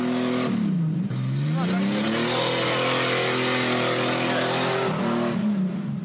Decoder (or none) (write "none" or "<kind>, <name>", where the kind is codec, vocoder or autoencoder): none